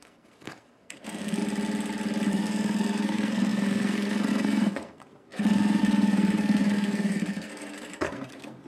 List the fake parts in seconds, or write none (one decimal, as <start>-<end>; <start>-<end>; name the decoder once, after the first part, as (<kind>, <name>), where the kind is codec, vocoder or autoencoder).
0.0-1.4 (codec, SNAC); 2.3-8.7